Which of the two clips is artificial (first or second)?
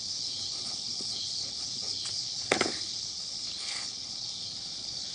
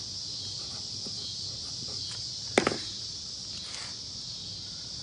first